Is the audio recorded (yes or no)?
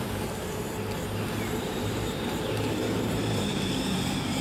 no